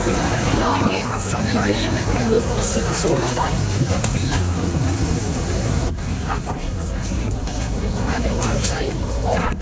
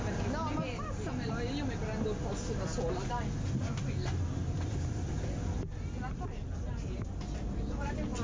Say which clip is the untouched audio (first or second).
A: second